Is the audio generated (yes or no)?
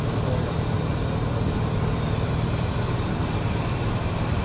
yes